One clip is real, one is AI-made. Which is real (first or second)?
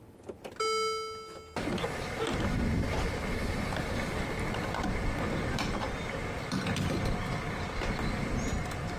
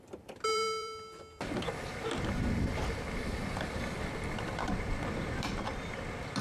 first